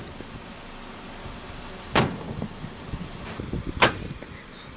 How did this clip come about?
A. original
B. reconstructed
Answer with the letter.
A